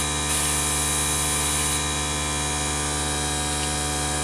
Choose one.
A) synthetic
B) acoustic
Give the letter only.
B